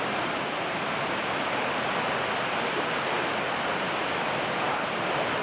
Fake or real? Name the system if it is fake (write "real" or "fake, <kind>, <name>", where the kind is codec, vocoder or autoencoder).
real